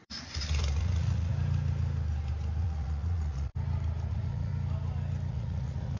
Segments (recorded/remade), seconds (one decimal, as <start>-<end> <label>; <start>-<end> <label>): 0.0-1.3 remade; 1.3-2.6 recorded; 2.6-3.5 remade; 3.5-4.1 recorded; 4.1-4.5 remade; 4.5-5.3 recorded; 5.3-6.0 remade

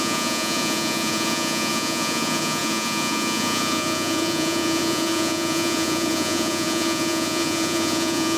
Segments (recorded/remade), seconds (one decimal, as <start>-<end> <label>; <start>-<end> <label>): 0.0-8.4 remade

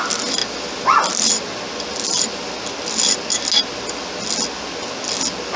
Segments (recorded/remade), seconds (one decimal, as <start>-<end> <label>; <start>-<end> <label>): 0.0-5.6 recorded

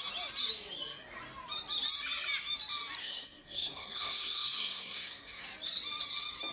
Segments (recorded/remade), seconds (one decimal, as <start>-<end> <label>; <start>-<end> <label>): 0.0-3.0 recorded; 3.0-5.4 remade; 5.4-6.5 recorded